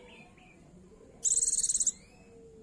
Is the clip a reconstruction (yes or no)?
no